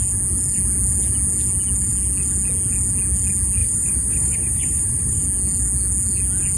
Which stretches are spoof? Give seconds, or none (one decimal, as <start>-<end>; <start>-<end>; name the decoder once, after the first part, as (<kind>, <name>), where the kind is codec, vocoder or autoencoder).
3.6-5.2 (vocoder, BigVGAN v2)